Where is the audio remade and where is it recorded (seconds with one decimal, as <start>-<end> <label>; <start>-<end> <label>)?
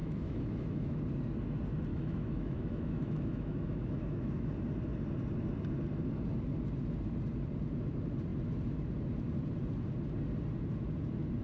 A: 0.0-1.0 remade; 1.0-1.9 recorded; 1.9-4.5 remade; 4.5-11.4 recorded